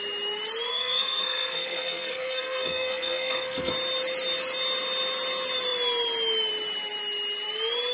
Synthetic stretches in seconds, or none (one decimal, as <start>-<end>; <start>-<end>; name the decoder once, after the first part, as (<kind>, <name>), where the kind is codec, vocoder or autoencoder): 0.7-3.7 (codec, SNAC)